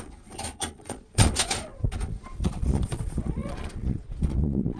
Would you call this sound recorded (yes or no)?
no